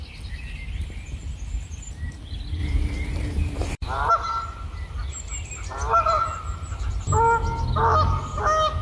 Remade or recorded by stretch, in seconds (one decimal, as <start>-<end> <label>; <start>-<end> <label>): 0.0-2.6 recorded; 2.6-4.1 remade; 4.1-8.8 recorded